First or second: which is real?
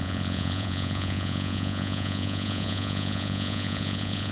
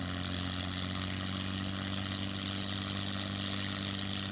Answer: second